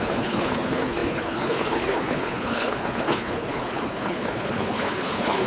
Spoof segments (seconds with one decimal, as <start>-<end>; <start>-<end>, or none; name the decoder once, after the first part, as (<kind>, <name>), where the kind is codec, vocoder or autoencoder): 0.0-5.5 (codec, HILCodec)